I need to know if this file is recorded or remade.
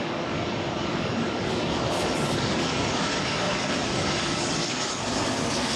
remade